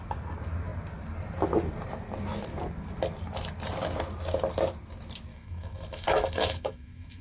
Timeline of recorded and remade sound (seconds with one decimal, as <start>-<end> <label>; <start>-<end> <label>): 0.0-5.3 recorded; 5.3-7.2 remade